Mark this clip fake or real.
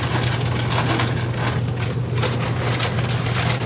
real